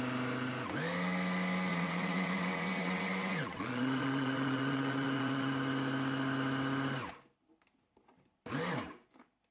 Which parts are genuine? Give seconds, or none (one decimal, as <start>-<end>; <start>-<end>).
0.0-1.7; 5.5-9.5